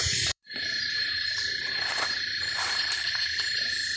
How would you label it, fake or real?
fake